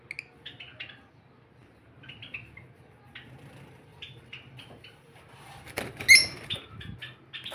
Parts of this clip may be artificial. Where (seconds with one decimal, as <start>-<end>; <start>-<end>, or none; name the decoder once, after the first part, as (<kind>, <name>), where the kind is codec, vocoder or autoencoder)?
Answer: 0.7-1.2 (vocoder, BigVGAN v2); 3.9-5.8